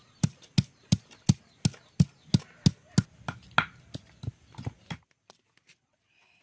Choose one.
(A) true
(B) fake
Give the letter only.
A